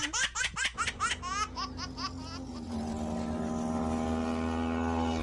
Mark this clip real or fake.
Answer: real